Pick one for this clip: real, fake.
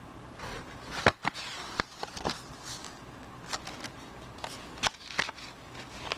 real